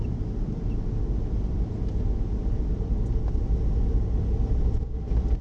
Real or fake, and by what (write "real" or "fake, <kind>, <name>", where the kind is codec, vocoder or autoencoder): real